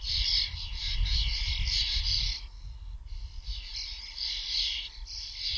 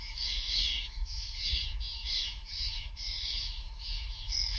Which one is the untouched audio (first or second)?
first